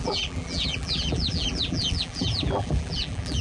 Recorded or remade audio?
remade